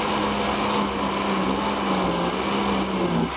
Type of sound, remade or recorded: recorded